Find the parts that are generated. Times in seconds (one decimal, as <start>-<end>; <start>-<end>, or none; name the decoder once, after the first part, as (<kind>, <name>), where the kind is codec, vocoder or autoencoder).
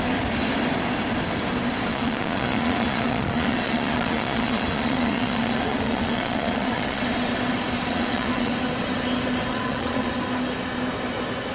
1.9-7.0 (vocoder, Vocos); 7.9-8.5; 9.5-10.1